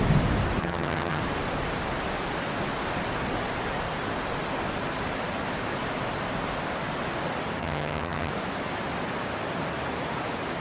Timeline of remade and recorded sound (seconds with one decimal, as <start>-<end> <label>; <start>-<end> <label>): 0.0-0.6 recorded; 0.6-1.2 remade; 1.2-7.6 recorded; 7.6-8.3 remade; 8.3-10.6 recorded

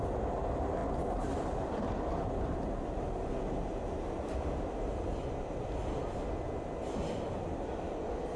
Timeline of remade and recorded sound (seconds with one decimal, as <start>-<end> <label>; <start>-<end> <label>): 0.0-8.4 recorded

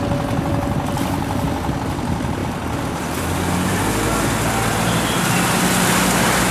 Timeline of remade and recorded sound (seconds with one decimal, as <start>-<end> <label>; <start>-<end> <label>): 0.0-6.5 recorded

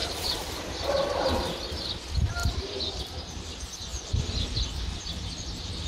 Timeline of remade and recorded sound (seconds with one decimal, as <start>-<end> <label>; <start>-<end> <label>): 0.0-1.9 remade; 1.9-2.4 recorded; 2.4-3.0 remade; 3.0-5.9 recorded

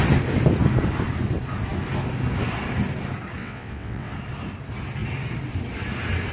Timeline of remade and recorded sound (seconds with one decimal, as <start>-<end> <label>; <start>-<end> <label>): 0.0-3.4 recorded; 3.4-4.1 remade; 4.1-6.3 recorded

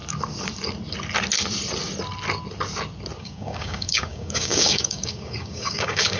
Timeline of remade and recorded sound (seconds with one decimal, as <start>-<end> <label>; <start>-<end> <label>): 0.0-3.2 recorded; 3.2-6.2 remade

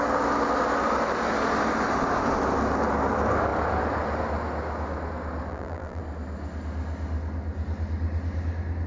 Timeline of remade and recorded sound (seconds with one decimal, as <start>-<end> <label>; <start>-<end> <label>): 0.0-5.5 recorded; 5.5-6.0 remade; 6.0-8.9 recorded